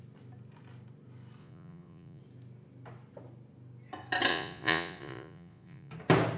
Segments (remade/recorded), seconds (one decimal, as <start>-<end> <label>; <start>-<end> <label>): 0.0-1.4 recorded; 1.4-2.2 remade; 2.2-4.3 recorded; 4.3-5.9 remade; 5.9-6.4 recorded